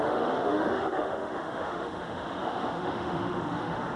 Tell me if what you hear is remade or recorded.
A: remade